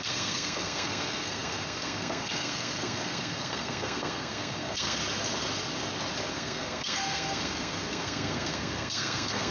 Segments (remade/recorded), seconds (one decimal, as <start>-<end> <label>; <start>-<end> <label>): 0.0-5.0 remade; 5.0-6.3 recorded; 6.3-9.5 remade